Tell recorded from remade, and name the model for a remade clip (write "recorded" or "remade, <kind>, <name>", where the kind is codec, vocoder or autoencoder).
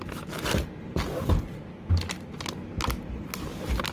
recorded